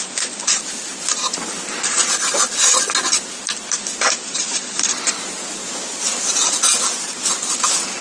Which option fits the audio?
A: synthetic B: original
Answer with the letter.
B